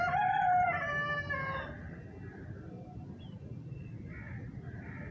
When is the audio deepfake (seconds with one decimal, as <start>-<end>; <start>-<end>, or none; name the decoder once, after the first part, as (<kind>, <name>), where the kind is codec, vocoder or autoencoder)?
none